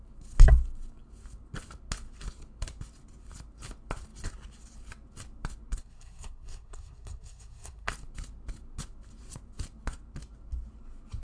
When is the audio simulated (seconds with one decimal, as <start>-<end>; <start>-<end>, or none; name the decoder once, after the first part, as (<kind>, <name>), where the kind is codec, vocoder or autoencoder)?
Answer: 5.8-7.9 (codec, SNAC)

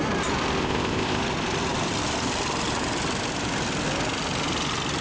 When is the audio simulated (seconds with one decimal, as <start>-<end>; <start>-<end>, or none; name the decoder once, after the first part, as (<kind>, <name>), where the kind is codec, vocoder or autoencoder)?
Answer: 0.6-1.2 (codec, ZipCodec)